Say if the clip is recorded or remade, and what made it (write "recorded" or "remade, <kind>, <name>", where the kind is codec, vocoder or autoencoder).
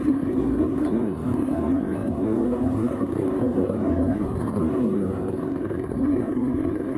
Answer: remade, codec, SNAC